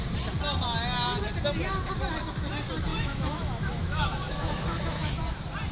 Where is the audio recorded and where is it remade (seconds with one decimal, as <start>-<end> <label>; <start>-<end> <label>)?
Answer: 0.0-2.9 recorded; 2.9-5.2 remade; 5.2-5.7 recorded

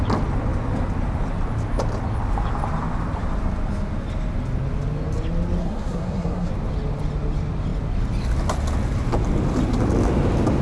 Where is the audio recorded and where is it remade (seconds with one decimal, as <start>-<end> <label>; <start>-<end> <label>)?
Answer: 0.0-5.6 recorded; 5.6-6.5 remade; 6.5-10.6 recorded